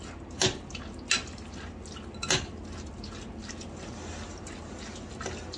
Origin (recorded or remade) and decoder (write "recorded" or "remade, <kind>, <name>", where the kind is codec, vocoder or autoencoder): recorded